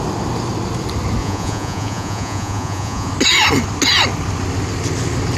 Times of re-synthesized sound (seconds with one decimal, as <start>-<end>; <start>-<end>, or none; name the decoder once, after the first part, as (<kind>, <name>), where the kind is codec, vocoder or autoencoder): 1.2-3.1 (vocoder, Vocos)